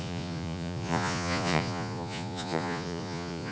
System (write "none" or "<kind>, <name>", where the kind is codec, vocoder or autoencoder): vocoder, Vocos